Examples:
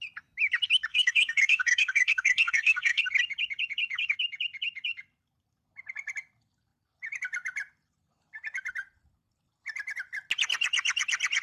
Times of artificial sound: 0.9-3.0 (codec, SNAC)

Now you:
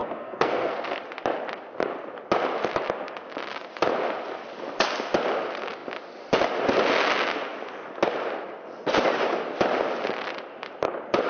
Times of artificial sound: 0.0-1.0 (codec, SNAC)

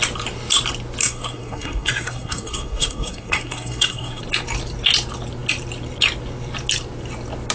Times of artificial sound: 1.0-4.2 (codec, SNAC)

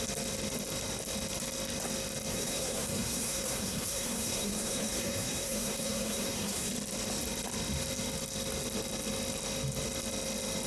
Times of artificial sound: 2.3-6.7 (codec, SNAC)

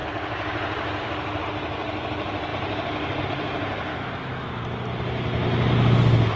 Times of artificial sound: 3.9-4.6 (autoencoder, DAC-VAE)